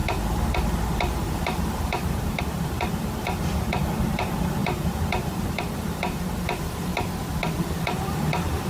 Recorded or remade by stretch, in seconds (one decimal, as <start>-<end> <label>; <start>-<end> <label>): 0.0-6.9 remade; 6.9-7.6 recorded; 7.6-8.7 remade